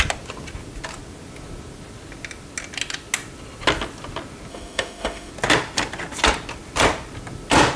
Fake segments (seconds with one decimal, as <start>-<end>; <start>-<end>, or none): 4.5-5.3